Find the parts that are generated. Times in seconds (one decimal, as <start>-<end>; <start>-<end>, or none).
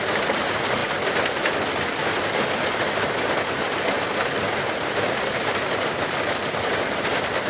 0.0-0.8; 5.2-7.5